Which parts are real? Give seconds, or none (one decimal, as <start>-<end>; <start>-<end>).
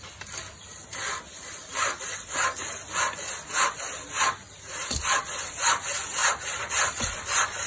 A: 0.0-7.7